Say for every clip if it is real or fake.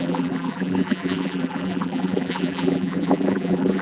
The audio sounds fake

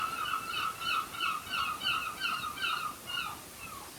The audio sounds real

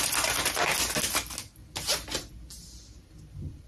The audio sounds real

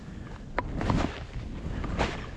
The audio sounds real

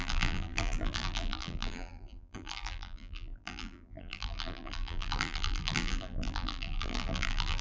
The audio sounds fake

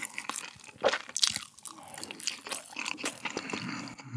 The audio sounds real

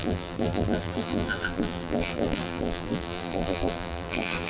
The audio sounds fake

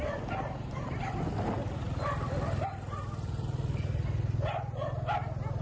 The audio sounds real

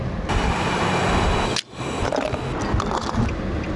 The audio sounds real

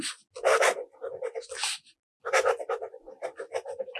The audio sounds real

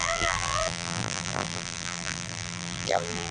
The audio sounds fake